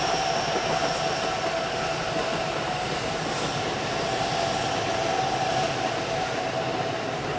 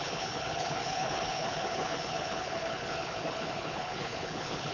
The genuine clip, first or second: first